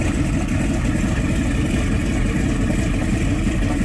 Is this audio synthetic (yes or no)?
no